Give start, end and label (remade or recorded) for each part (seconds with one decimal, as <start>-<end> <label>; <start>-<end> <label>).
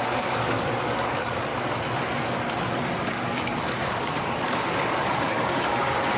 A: 0.0-1.5 remade; 1.5-3.1 recorded; 3.1-6.2 remade